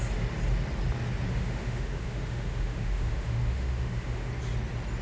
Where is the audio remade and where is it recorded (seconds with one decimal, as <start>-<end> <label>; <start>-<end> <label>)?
0.0-1.3 recorded; 1.3-4.3 remade; 4.3-5.0 recorded